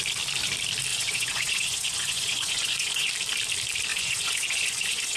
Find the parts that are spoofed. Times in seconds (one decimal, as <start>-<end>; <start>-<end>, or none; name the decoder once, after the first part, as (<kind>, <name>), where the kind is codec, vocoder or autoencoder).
0.9-3.1 (vocoder, Vocos); 3.9-5.2